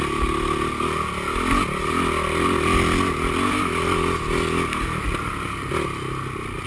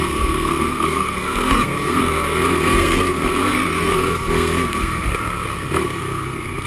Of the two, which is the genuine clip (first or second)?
first